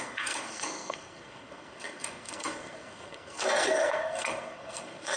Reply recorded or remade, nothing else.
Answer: remade